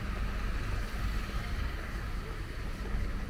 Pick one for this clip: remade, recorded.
recorded